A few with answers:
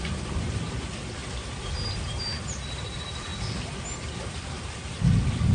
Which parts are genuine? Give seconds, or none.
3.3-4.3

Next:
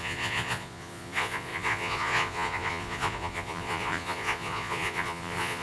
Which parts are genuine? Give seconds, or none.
none

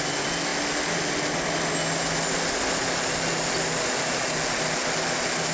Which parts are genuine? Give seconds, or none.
0.0-5.5

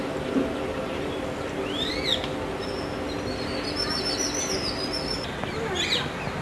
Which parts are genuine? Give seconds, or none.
0.0-6.4

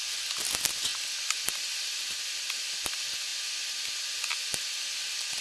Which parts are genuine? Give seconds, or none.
0.0-5.4

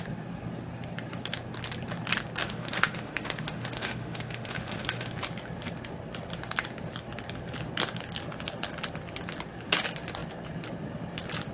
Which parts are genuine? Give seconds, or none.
0.0-2.4; 5.1-11.5

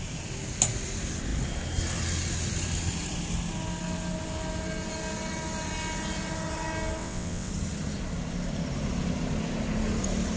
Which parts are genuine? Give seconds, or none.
0.0-7.0; 7.5-10.4

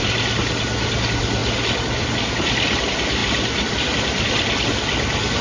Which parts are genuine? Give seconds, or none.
0.0-5.4